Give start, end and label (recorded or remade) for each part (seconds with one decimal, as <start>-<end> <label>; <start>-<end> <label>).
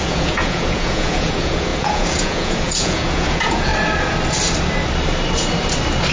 0.0-3.7 remade; 3.7-6.1 recorded